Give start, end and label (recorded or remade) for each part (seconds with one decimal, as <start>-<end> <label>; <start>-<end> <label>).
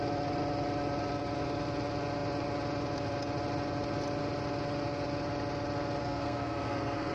0.0-6.0 recorded; 6.0-7.1 remade